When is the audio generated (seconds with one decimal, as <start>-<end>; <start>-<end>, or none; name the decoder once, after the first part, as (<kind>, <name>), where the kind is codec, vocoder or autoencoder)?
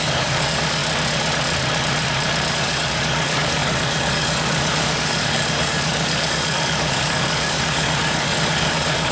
0.0-0.8 (codec, DAC); 2.5-9.1